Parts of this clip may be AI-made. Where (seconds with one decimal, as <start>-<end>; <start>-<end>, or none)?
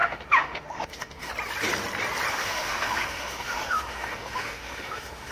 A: 0.0-1.3; 2.3-5.3